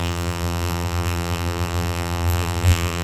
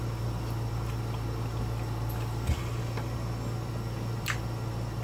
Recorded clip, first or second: second